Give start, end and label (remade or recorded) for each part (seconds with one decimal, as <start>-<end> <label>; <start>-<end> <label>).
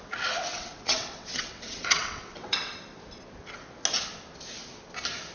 0.0-0.5 recorded; 0.5-2.7 remade; 2.7-5.3 recorded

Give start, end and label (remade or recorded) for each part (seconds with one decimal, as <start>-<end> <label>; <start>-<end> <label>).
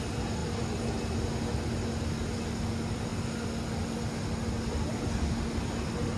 0.0-6.2 recorded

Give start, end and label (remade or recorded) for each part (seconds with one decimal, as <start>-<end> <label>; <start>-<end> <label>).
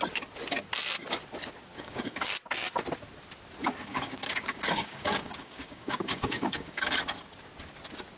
0.0-1.7 recorded; 1.7-2.3 remade; 2.3-3.9 recorded; 3.9-6.9 remade; 6.9-8.2 recorded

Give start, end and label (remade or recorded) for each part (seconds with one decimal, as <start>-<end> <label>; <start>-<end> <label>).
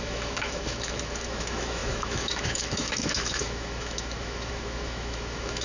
0.0-5.6 remade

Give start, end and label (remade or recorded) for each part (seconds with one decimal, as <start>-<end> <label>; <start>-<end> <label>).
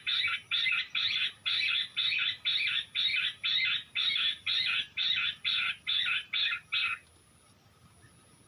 0.0-8.5 recorded